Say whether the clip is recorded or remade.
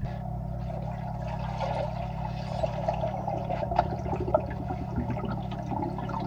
recorded